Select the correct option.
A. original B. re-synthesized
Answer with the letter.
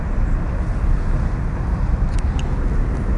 A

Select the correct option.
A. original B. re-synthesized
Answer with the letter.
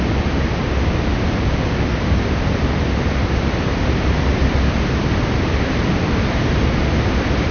A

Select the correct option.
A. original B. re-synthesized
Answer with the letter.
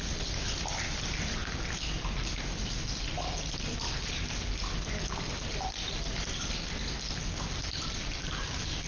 A